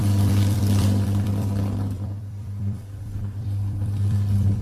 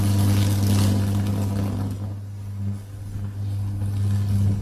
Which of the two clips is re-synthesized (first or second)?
first